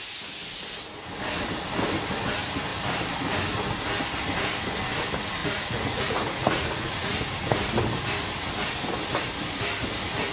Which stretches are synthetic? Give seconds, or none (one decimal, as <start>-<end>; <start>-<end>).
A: 5.4-7.2